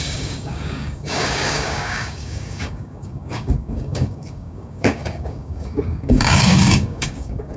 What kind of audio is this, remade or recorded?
remade